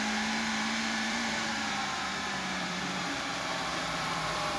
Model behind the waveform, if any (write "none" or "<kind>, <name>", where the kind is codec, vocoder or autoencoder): vocoder, BigVGAN v2